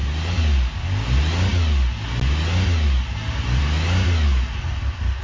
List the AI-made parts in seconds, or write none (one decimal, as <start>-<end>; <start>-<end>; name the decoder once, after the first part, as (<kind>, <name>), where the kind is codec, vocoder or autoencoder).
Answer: none